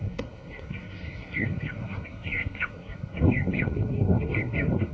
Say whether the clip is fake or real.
fake